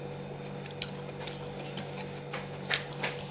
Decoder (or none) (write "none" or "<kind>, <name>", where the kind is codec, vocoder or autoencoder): none